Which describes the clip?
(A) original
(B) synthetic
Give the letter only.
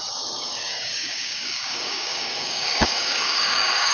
B